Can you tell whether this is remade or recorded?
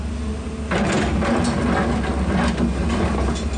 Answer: recorded